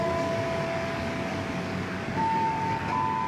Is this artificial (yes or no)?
yes